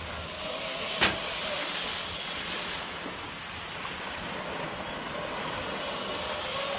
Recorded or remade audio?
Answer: recorded